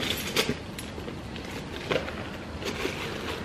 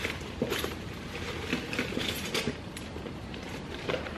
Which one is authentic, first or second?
first